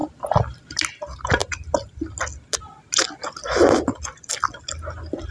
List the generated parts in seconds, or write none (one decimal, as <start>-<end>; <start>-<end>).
none

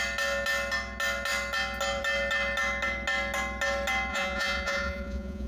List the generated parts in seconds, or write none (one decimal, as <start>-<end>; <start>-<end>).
4.1-5.5

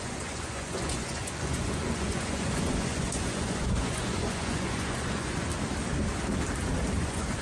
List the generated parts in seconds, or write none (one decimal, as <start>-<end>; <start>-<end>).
0.0-5.5; 7.0-7.4

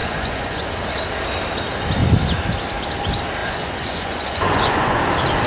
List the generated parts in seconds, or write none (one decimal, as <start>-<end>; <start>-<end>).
0.0-0.7; 3.4-5.0

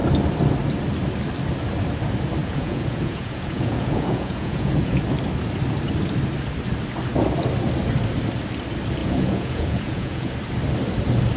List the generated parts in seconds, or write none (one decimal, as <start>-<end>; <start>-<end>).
2.4-5.0; 9.0-10.3

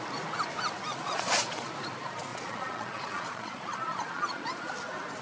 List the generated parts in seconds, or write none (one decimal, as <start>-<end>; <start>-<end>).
0.9-1.7; 2.3-4.7